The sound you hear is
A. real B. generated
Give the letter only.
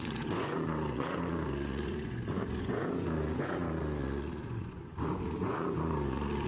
B